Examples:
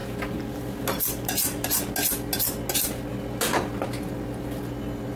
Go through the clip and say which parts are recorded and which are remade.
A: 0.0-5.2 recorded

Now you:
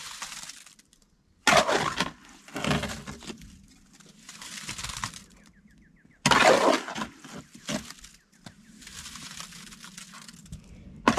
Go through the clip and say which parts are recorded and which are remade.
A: 0.0-10.4 recorded; 10.4-11.2 remade